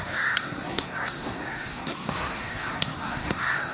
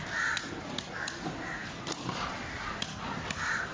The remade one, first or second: first